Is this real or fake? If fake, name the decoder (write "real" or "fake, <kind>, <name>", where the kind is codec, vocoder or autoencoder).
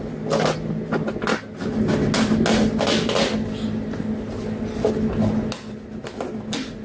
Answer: real